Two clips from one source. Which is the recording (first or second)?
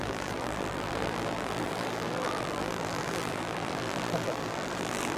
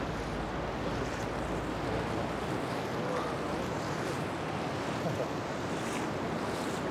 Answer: second